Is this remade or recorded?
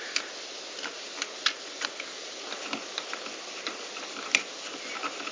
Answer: recorded